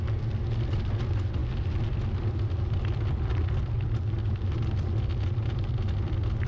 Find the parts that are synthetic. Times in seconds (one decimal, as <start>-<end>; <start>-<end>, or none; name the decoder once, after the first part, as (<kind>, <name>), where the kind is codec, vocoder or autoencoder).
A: none